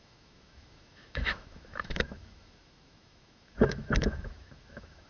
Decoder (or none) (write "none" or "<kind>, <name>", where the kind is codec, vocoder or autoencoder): autoencoder, DAC-VAE